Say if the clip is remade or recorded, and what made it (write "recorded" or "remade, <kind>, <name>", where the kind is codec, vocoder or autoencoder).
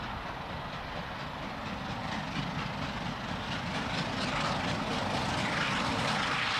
recorded